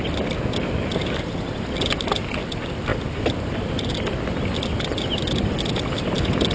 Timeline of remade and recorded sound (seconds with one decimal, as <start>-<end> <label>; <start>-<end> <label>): 0.0-2.9 recorded; 2.9-4.4 remade; 4.4-6.5 recorded